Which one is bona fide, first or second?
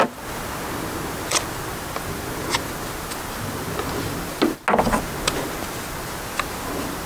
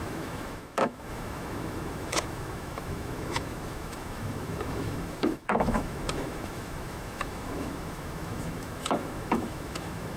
first